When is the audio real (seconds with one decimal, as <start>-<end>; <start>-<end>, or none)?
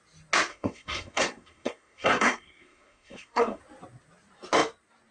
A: 0.0-0.5; 3.6-5.1